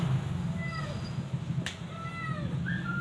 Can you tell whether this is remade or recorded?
recorded